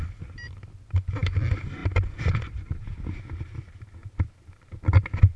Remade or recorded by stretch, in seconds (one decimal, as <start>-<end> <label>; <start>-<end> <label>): 0.0-5.4 recorded